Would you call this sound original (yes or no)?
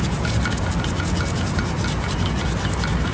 yes